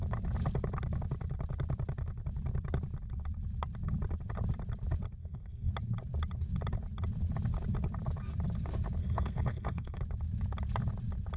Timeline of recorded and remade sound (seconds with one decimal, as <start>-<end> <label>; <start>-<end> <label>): 0.0-5.2 recorded; 5.2-5.7 remade; 5.7-9.0 recorded; 9.0-10.0 remade; 10.0-11.4 recorded